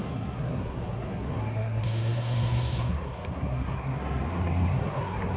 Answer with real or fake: fake